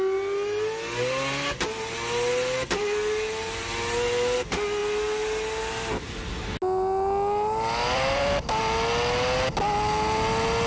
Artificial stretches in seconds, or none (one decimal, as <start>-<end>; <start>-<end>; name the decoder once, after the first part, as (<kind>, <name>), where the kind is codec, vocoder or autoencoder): 7.8-8.5 (vocoder, BigVGAN v2)